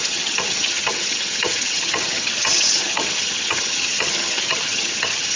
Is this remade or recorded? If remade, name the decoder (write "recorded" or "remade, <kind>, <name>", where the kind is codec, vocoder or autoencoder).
remade, vocoder, HiFi-GAN